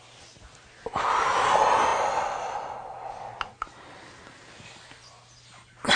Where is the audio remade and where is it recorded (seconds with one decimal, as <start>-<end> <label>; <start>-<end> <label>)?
0.0-5.9 recorded